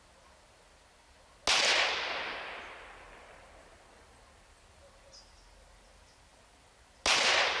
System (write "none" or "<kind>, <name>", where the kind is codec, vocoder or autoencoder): none